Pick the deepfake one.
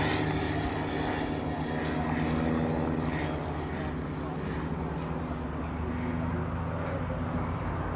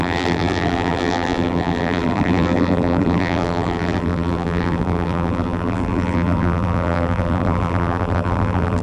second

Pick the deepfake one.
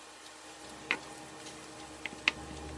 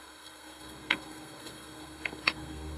second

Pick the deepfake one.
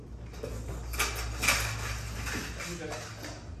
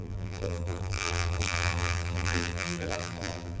second